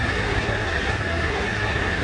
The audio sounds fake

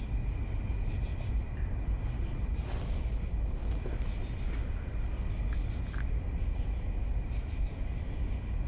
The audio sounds real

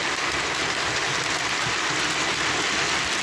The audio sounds real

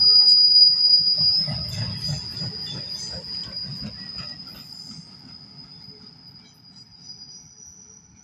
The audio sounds real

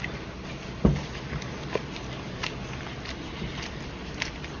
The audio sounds real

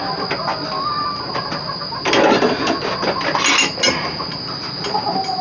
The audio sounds real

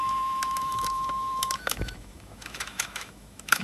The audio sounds fake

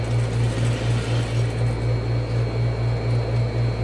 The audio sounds real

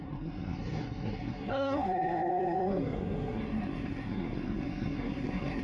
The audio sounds fake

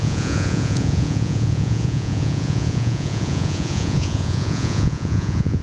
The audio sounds fake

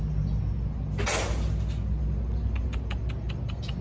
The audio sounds real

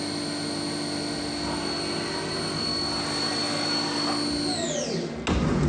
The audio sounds real